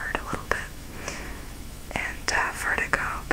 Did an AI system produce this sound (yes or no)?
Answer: yes